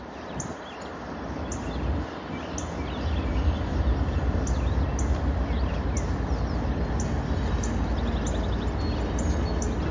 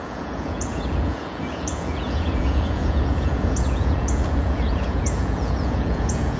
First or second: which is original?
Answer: first